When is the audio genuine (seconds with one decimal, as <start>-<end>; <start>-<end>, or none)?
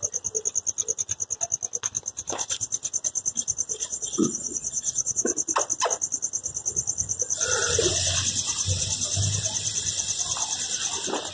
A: 0.0-3.9; 5.3-11.3